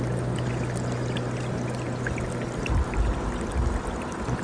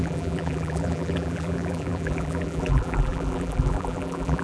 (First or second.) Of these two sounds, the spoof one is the second